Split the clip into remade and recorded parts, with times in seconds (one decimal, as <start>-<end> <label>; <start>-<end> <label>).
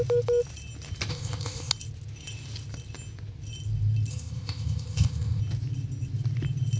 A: 0.0-1.1 recorded; 1.1-1.7 remade; 1.7-4.1 recorded; 4.1-5.4 remade; 5.4-6.8 recorded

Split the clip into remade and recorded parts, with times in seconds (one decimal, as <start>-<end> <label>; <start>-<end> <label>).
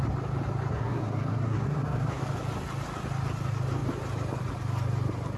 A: 0.0-0.7 recorded; 0.7-2.2 remade; 2.2-5.4 recorded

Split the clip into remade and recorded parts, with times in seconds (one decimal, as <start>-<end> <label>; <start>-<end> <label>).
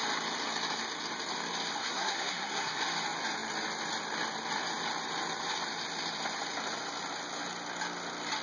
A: 0.0-1.8 recorded; 1.8-2.8 remade; 2.8-8.4 recorded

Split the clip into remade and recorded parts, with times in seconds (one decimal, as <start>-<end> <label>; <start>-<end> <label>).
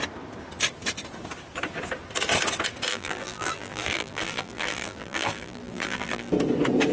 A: 0.0-2.9 recorded; 2.9-6.3 remade; 6.3-6.9 recorded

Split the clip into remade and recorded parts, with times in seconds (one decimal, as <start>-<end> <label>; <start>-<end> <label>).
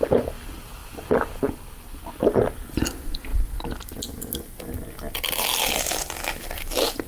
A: 0.0-7.1 recorded